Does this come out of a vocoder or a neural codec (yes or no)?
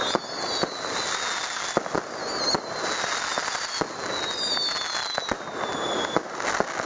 no